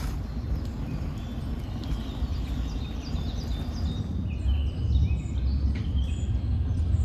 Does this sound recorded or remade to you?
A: recorded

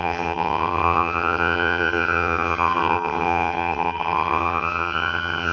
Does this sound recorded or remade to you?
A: remade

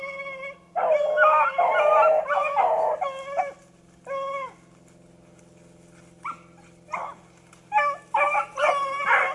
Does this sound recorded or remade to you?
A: recorded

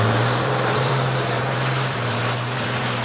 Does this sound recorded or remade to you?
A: remade